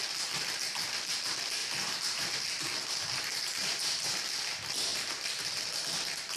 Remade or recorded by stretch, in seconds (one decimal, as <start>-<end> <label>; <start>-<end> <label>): 0.0-1.6 recorded; 1.6-2.3 remade; 2.3-3.6 recorded; 3.6-4.1 remade; 4.1-6.4 recorded